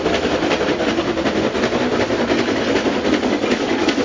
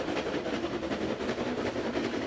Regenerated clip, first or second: second